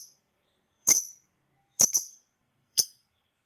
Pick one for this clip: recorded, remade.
remade